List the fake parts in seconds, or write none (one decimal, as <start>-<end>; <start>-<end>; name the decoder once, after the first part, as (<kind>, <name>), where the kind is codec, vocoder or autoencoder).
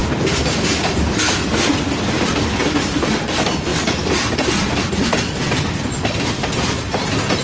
3.7-4.3 (vocoder, BigVGAN v2)